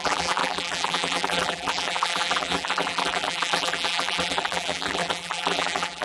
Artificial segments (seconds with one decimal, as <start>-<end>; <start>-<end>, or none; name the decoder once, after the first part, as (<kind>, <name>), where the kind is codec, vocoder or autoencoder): 0.0-6.0 (vocoder, BigVGAN v2)